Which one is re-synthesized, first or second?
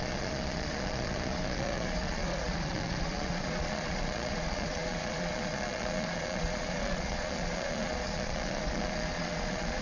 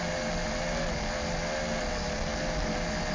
first